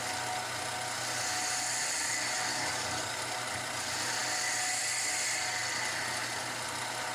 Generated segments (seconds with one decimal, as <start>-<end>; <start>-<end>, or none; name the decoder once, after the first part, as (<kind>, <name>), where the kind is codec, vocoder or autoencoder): 2.5-3.2 (codec, DAC)